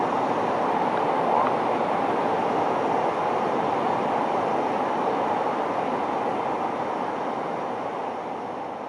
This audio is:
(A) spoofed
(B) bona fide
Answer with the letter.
B